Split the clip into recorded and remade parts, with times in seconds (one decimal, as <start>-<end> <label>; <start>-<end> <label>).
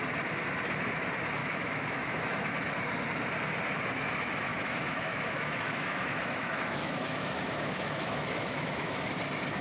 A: 0.0-1.4 recorded; 1.4-2.3 remade; 2.3-4.5 recorded; 4.5-9.1 remade; 9.1-9.6 recorded